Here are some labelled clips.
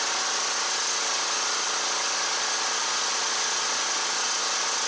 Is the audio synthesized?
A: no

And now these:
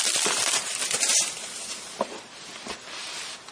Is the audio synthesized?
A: no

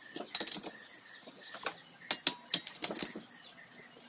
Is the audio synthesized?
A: no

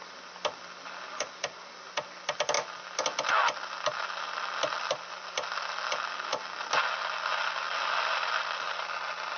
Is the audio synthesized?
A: no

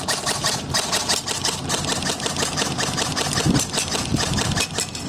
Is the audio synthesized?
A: no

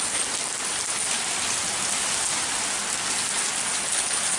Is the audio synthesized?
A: no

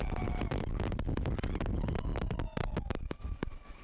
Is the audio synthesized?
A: no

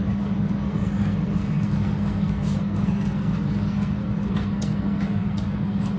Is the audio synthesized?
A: yes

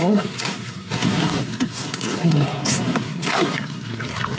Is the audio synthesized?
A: yes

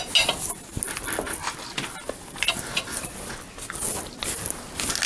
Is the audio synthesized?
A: no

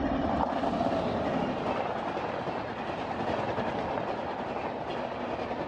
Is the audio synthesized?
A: no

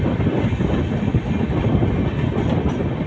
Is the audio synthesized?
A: no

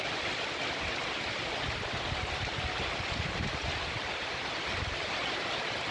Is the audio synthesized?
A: no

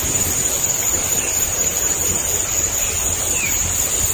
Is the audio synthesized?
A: no